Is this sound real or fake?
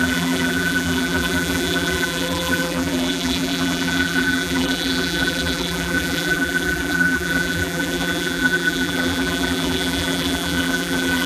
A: fake